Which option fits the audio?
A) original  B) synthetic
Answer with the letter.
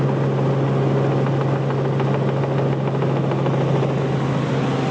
A